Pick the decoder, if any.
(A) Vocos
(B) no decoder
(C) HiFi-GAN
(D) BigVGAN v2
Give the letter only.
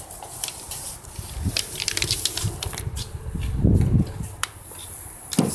D